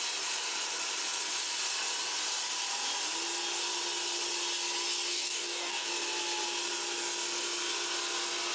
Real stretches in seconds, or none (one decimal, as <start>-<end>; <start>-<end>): 0.0-5.1; 5.9-8.5

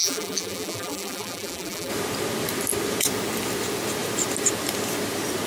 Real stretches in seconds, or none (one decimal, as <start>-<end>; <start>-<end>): 1.9-5.5

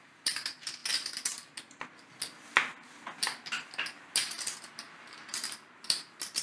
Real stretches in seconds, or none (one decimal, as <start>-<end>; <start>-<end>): 0.8-4.6

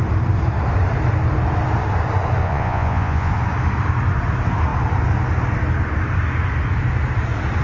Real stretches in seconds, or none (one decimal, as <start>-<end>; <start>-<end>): 0.0-2.4; 3.3-7.6

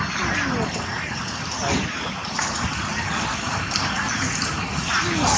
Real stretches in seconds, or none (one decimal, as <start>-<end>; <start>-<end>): 0.0-5.4